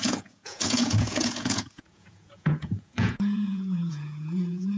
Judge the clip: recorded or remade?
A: remade